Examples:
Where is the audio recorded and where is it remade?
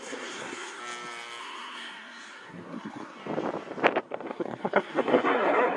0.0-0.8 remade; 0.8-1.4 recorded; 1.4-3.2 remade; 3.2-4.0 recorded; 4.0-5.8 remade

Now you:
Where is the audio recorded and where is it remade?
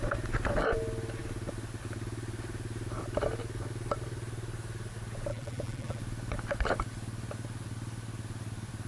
0.0-5.3 recorded; 5.3-6.0 remade; 6.0-8.9 recorded